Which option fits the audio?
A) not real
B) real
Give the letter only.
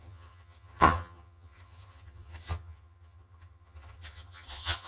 A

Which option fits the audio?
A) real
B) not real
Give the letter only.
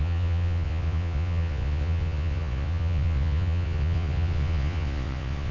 B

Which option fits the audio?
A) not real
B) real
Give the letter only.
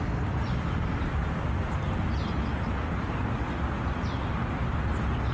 B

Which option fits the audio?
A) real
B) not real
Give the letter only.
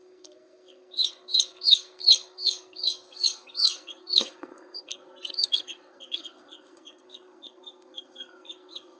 B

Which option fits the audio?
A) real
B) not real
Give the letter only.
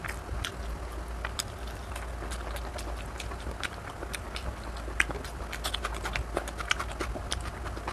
A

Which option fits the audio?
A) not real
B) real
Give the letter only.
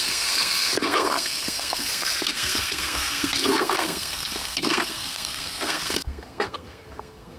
A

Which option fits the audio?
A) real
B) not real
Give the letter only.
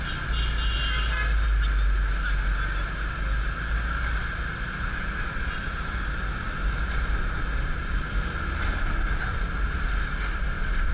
A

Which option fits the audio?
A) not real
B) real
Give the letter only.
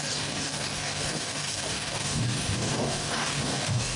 A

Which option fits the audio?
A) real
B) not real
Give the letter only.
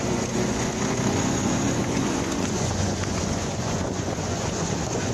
B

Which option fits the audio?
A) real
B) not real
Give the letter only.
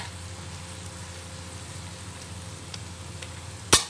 A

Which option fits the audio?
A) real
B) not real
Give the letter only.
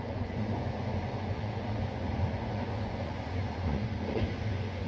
B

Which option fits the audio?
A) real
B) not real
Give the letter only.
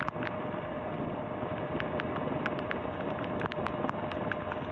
A